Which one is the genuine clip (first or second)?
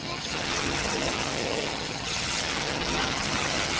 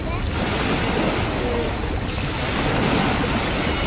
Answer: second